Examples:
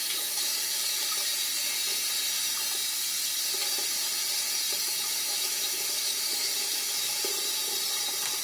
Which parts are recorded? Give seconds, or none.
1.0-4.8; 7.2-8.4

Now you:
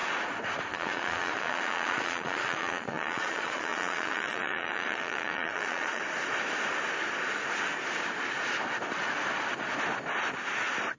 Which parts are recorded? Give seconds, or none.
0.0-0.7; 6.0-11.0

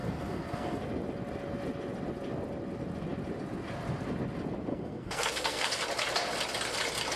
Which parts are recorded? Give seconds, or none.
0.8-4.7; 5.8-7.2

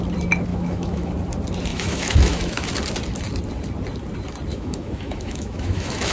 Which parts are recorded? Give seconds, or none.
0.0-0.5; 1.1-1.7; 2.7-4.5

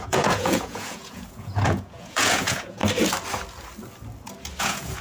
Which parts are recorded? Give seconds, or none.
2.8-4.6